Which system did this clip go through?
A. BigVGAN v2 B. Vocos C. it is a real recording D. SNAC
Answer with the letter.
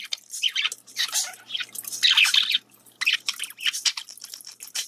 C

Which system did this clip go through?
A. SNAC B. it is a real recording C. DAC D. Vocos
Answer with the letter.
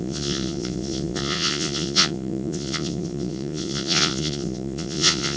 D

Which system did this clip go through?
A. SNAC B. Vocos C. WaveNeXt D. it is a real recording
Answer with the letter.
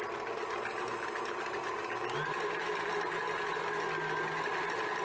D